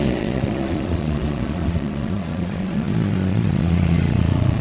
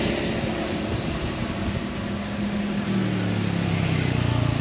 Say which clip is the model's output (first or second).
first